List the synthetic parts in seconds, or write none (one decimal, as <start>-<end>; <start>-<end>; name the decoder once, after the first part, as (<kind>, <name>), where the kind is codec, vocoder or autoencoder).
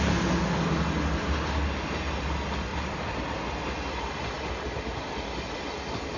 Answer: 2.7-3.4 (vocoder, BigVGAN v2)